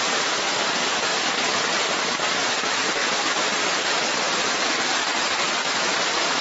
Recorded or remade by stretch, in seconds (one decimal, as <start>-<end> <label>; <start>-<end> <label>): 0.0-6.4 recorded